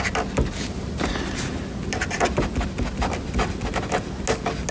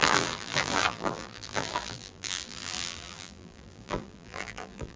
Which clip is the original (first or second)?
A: first